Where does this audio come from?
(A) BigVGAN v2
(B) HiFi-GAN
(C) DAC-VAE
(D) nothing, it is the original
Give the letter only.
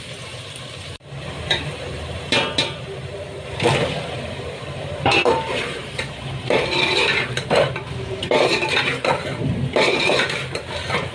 A